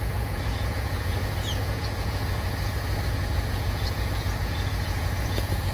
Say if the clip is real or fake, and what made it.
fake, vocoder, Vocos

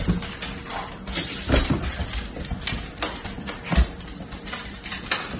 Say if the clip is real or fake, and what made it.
real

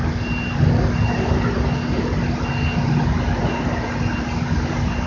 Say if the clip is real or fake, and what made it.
real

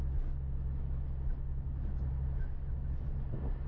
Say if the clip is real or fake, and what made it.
real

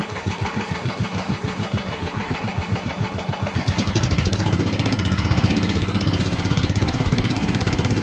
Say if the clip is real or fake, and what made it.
fake, codec, SNAC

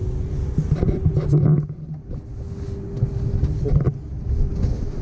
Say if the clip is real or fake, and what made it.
real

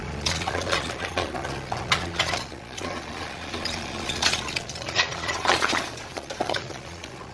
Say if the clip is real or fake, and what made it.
fake, vocoder, Vocos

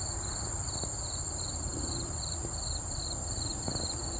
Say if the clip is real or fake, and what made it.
fake, vocoder, BigVGAN v2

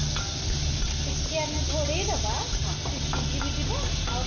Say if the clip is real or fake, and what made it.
real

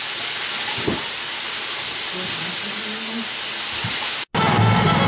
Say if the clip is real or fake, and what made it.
real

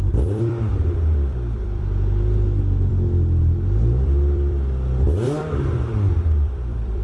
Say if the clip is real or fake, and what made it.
fake, vocoder, BigVGAN v2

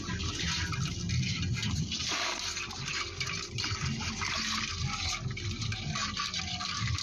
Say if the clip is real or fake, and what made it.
real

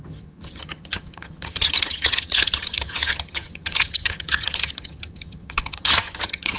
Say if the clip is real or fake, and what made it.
fake, vocoder, HiFi-GAN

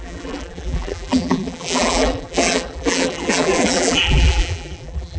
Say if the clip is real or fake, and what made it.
fake, vocoder, BigVGAN v2